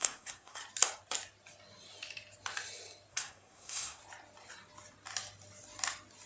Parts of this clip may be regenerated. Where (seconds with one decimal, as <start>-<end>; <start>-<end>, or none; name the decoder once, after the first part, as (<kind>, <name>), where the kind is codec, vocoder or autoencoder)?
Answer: 0.0-0.6 (codec, SNAC); 3.1-4.0